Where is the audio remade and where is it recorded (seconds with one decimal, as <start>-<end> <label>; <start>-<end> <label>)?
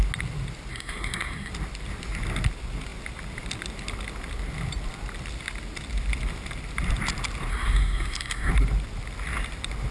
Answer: 0.0-0.7 recorded; 0.7-1.5 remade; 1.5-7.5 recorded; 7.5-8.5 remade; 8.5-9.9 recorded